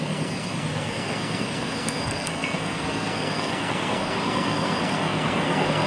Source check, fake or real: fake